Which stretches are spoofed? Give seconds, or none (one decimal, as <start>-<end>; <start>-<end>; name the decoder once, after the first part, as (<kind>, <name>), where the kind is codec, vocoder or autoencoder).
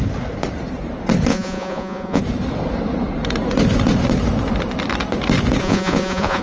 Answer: 1.3-2.2 (vocoder, Vocos); 5.6-6.4